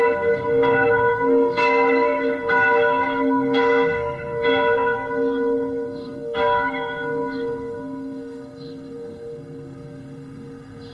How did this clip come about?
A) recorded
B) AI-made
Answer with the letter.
B